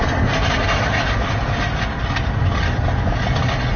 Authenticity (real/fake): real